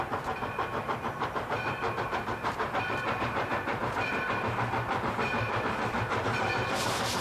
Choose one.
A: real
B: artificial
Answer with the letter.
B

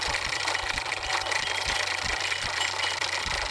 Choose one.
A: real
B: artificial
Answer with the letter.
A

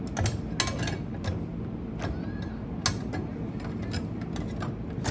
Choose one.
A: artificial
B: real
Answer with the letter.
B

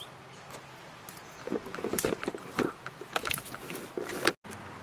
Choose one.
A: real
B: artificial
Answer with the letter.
A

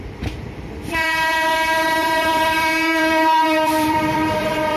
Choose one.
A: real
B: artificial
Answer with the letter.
B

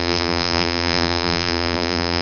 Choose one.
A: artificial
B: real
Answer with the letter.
A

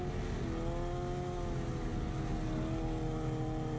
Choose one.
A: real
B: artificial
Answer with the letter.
A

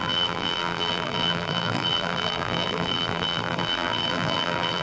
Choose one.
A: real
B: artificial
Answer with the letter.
B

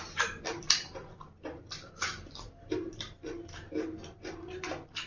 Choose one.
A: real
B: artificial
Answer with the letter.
B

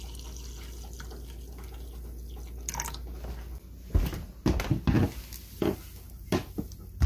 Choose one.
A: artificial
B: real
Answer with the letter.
B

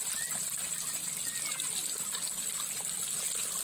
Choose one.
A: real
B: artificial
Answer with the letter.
A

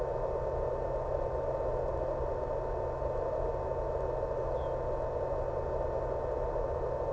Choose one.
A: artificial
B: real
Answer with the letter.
B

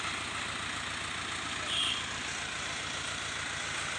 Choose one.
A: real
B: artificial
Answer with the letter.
A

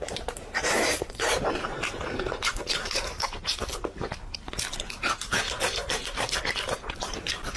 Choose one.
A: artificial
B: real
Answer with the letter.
A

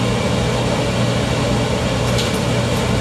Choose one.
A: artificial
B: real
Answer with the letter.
B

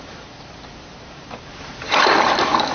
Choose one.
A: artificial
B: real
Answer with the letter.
A